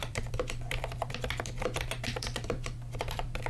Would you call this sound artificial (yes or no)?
yes